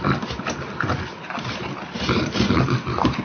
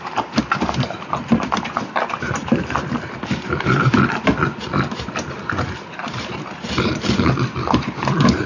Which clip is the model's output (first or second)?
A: second